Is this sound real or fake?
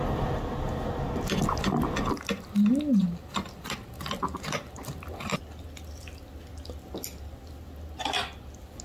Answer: real